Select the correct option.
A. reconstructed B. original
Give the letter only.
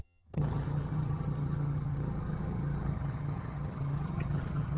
A